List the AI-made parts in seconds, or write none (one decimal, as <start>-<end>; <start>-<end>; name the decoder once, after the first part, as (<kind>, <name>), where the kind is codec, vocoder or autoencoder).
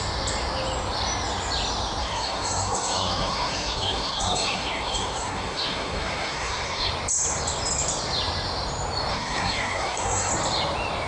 2.0-6.9 (codec, SNAC); 9.1-10.3